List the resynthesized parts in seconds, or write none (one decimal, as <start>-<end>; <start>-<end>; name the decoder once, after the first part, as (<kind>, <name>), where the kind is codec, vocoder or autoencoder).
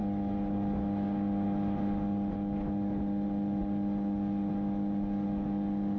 none